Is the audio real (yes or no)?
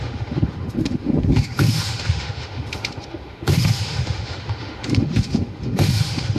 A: no